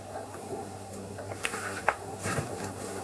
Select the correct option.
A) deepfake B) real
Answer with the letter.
A